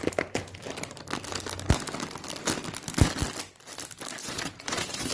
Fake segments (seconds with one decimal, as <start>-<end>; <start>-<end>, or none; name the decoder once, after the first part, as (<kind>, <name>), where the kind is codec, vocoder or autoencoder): 4.2-5.1 (vocoder, Vocos)